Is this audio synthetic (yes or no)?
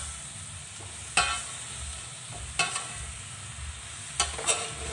no